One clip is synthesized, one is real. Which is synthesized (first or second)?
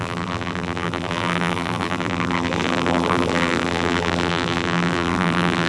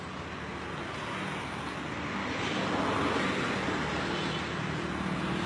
first